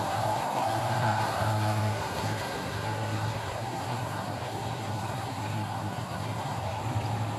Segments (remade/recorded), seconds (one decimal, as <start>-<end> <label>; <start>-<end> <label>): 0.0-6.8 remade; 6.8-7.4 recorded